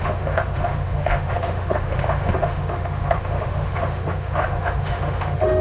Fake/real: fake